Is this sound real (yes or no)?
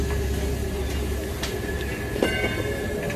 yes